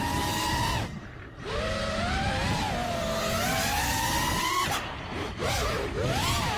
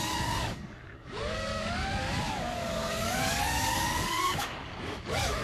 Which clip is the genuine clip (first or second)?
first